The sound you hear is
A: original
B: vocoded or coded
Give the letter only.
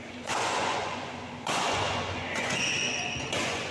B